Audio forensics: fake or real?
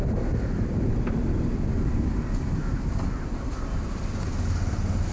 real